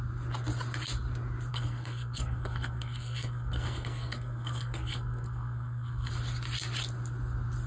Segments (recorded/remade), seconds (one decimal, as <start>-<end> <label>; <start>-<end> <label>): 0.0-1.5 recorded; 1.5-6.1 remade; 6.1-7.7 recorded